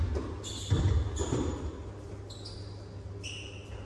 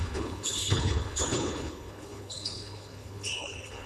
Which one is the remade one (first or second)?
second